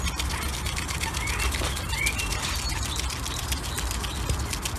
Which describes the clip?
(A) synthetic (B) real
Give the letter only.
B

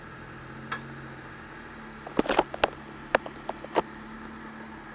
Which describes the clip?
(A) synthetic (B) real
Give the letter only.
B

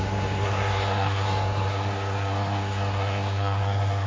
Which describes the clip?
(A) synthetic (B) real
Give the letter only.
A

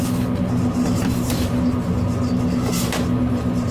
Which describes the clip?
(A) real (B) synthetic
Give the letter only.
A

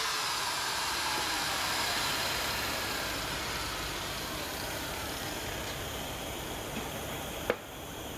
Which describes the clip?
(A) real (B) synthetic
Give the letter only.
B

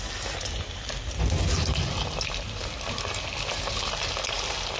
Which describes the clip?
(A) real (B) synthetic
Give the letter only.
A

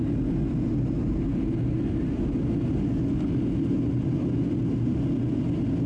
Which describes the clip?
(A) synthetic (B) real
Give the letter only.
B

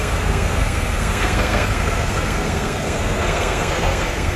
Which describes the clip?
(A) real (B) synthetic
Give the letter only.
B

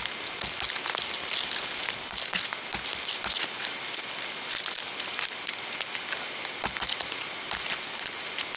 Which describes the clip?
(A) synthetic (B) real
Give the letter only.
B